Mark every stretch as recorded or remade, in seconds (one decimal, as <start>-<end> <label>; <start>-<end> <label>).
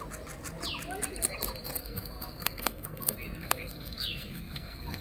0.0-1.8 recorded; 1.8-5.0 remade